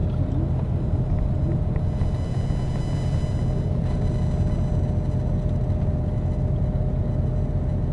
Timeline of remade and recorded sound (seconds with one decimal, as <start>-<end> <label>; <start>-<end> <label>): 0.0-7.9 recorded